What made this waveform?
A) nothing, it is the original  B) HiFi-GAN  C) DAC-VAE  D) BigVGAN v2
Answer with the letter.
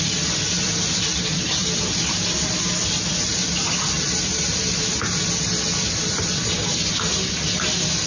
A